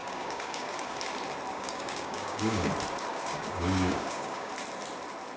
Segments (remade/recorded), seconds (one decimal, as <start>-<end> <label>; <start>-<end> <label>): 0.0-1.0 remade; 1.0-1.5 recorded; 1.5-2.7 remade; 2.7-3.1 recorded; 3.1-4.5 remade; 4.5-5.4 recorded